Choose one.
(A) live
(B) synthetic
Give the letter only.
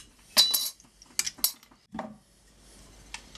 A